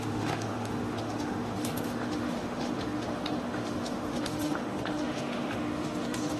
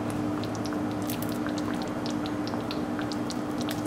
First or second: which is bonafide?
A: second